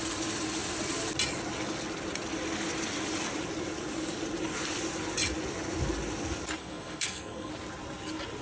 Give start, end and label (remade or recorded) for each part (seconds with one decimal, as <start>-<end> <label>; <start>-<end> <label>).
0.0-6.6 recorded; 6.6-7.5 remade; 7.5-8.4 recorded